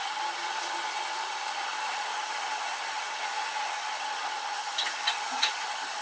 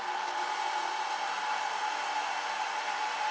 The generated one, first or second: first